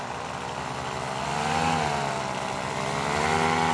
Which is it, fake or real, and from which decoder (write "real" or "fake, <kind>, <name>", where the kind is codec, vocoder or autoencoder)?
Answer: real